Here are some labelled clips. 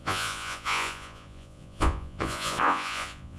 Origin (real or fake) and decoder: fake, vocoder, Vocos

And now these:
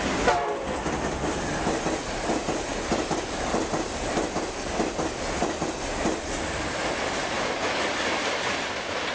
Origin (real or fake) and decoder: real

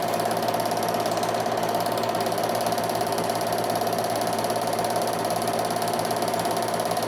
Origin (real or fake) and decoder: real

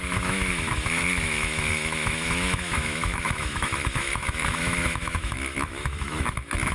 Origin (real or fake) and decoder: fake, autoencoder, DAC-VAE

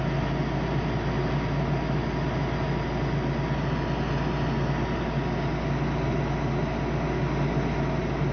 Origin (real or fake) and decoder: real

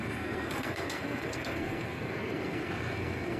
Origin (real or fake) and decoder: fake, codec, SNAC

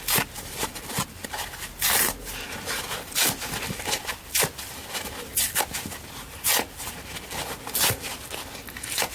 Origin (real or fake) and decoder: real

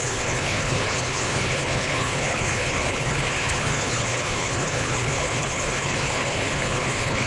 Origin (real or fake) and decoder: fake, codec, HILCodec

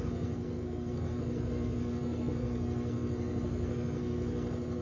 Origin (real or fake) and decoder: fake, codec, SNAC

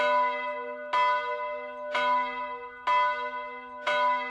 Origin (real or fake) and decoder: real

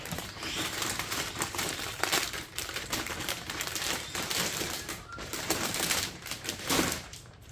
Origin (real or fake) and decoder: fake, vocoder, BigVGAN v2